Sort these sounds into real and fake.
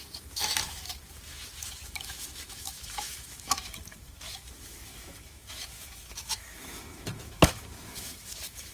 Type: fake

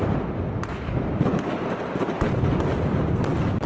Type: real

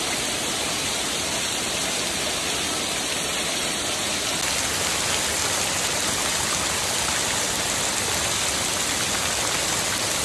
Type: real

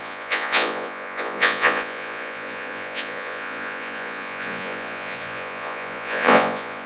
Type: fake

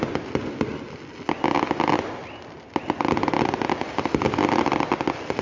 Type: real